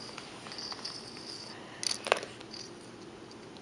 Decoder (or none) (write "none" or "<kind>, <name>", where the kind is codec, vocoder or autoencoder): none